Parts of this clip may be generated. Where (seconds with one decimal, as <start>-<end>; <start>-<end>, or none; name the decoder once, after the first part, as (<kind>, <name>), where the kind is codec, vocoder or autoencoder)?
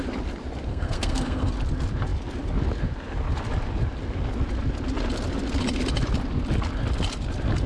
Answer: 0.7-1.5 (codec, SNAC)